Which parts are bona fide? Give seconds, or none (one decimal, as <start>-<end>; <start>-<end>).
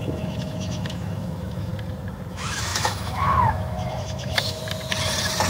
1.7-2.3; 4.6-5.5